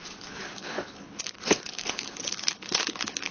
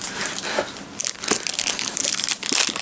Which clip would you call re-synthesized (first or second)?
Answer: first